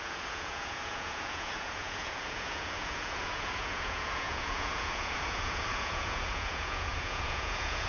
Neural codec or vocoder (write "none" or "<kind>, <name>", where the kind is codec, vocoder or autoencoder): vocoder, Vocos